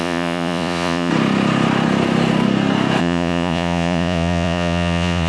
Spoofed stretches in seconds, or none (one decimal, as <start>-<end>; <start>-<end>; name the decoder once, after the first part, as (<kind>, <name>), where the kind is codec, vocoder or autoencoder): 0.0-1.1 (vocoder, Vocos); 3.0-5.3